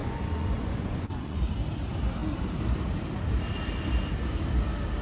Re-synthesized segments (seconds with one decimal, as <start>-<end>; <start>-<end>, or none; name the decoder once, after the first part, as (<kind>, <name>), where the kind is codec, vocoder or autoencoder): 0.0-1.4 (vocoder, Vocos)